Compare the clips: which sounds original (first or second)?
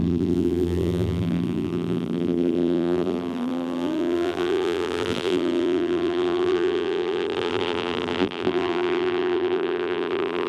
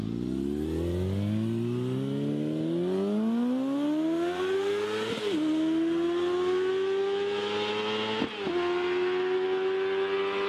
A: second